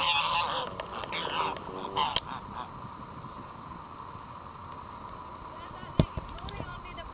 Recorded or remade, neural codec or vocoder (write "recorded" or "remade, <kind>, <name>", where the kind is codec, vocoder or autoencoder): recorded